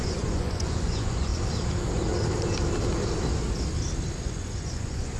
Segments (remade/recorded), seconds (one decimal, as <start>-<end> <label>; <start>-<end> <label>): 0.0-1.3 remade; 1.3-4.2 recorded; 4.2-5.2 remade